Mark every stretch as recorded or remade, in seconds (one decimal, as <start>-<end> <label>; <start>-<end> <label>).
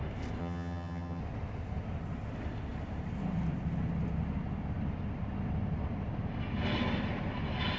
0.0-0.4 recorded; 0.4-1.2 remade; 1.2-7.8 recorded